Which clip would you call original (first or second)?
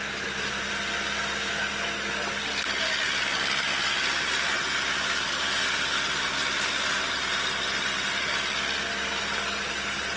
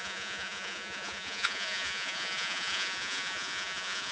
first